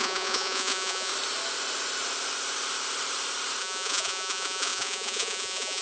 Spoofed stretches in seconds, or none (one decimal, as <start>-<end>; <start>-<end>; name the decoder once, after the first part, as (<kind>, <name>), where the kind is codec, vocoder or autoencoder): 0.0-1.1 (vocoder, Vocos); 3.6-5.8